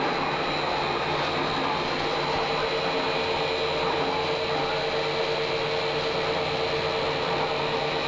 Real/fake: real